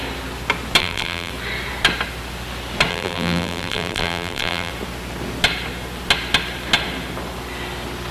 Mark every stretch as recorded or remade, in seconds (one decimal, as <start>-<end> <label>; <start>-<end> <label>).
0.0-0.8 recorded; 0.8-1.3 remade; 1.3-2.9 recorded; 2.9-4.7 remade; 4.7-8.1 recorded